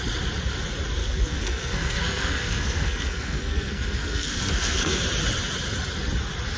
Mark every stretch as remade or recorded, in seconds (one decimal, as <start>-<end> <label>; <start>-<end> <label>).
0.0-1.0 recorded; 1.0-5.0 remade; 5.0-6.6 recorded